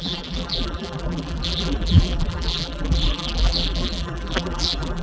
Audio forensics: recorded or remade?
remade